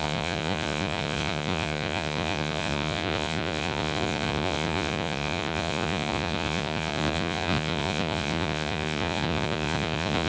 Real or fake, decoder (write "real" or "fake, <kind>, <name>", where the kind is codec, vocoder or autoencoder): fake, vocoder, Vocos